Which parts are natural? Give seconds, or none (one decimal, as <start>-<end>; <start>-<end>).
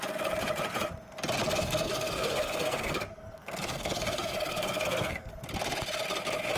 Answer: 0.0-1.4; 5.3-6.6